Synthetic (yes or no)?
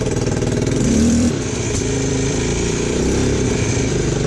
yes